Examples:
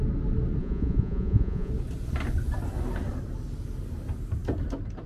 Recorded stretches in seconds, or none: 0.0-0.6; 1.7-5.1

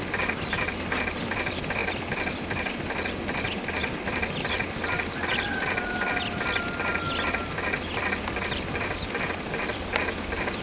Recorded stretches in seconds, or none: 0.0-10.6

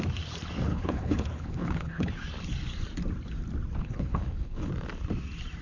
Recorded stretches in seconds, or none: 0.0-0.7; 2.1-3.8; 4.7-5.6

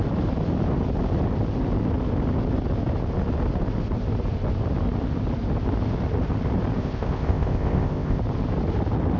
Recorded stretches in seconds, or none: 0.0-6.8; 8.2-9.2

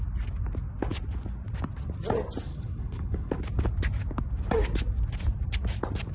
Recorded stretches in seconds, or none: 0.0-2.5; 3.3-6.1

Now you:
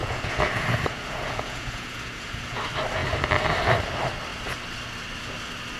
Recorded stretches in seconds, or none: 2.6-5.8

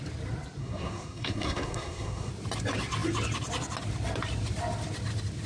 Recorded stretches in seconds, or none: 0.0-0.6; 2.3-5.5